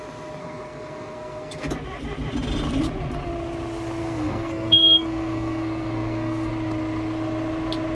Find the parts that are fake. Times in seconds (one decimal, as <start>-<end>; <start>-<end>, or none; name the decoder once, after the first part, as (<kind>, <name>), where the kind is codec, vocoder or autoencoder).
0.4-1.7 (codec, SNAC); 4.0-6.5